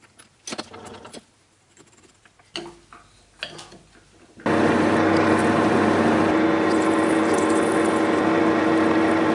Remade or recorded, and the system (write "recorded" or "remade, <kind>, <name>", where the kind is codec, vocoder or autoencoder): recorded